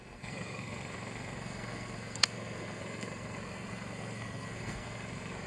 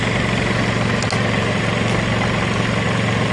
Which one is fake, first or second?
first